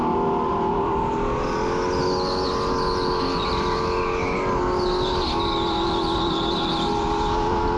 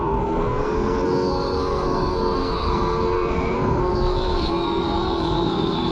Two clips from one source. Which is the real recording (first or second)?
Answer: first